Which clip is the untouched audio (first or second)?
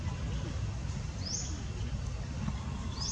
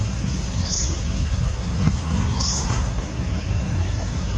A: first